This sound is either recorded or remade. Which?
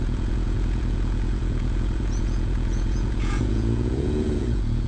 remade